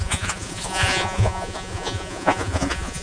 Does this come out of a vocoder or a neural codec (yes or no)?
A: yes